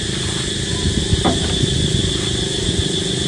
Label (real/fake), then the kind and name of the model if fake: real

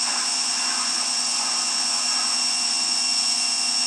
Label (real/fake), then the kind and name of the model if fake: fake, vocoder, Vocos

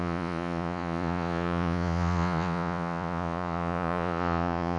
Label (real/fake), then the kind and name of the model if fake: fake, vocoder, Vocos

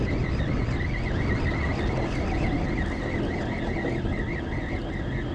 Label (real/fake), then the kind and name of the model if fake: real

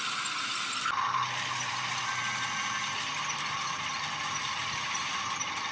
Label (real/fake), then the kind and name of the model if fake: real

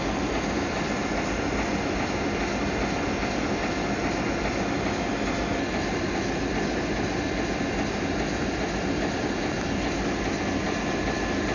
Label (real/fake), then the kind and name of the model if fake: real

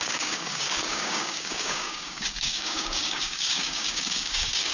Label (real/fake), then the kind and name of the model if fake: fake, codec, DAC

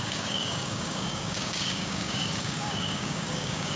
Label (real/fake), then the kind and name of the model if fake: fake, codec, DAC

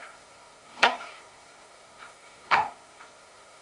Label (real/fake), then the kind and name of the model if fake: fake, codec, SNAC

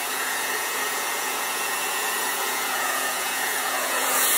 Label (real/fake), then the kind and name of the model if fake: fake, vocoder, Vocos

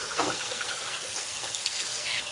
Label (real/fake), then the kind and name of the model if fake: fake, codec, SNAC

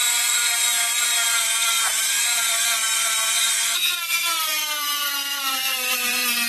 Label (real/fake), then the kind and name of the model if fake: fake, vocoder, BigVGAN v2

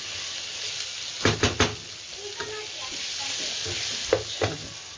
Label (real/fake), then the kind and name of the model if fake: real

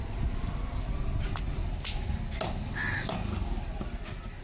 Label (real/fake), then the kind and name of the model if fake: real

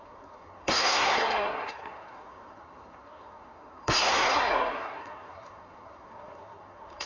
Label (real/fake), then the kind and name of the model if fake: fake, codec, SNAC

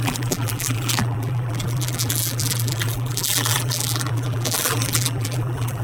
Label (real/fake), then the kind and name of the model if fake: fake, vocoder, BigVGAN v2